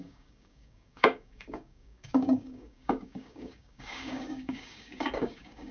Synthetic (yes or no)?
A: yes